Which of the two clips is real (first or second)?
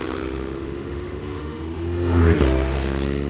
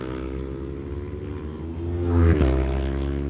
second